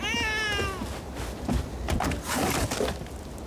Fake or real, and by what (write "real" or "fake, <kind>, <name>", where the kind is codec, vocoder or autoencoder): real